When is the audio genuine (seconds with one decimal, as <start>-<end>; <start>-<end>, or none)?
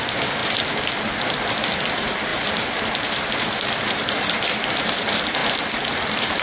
0.4-1.9; 5.4-5.9